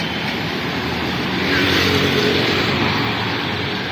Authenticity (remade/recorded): recorded